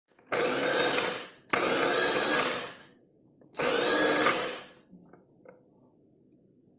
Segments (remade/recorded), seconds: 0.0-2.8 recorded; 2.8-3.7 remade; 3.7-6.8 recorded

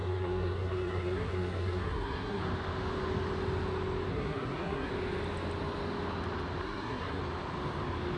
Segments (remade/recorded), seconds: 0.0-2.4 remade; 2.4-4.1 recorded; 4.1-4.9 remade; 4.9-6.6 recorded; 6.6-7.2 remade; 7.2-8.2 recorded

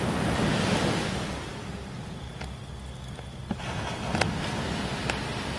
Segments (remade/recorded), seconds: 0.0-5.6 recorded

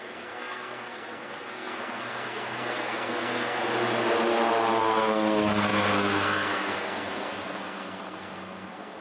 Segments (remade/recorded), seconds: 0.0-3.6 remade; 3.6-4.8 recorded; 4.8-9.0 remade

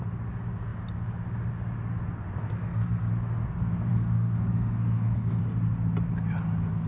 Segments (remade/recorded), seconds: 0.0-2.4 recorded; 2.4-3.1 remade; 3.1-3.9 recorded; 3.9-5.4 remade; 5.4-6.9 recorded

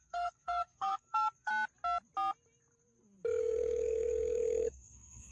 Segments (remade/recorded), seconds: 0.0-1.5 remade; 1.5-3.4 recorded; 3.4-5.3 remade

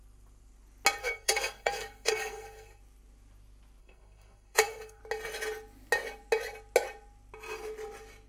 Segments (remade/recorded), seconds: 0.0-1.0 recorded; 1.0-2.8 remade; 2.8-3.8 recorded; 3.8-5.0 remade; 5.0-8.3 recorded

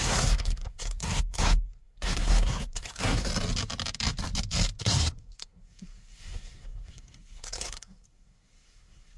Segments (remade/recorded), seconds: 0.0-3.3 remade; 3.3-4.8 recorded; 4.8-9.2 remade